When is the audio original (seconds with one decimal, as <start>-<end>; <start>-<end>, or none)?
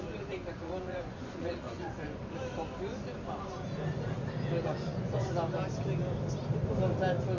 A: 2.2-4.6; 5.3-7.4